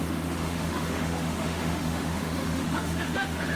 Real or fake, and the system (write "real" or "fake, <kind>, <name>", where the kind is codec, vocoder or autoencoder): fake, autoencoder, DAC-VAE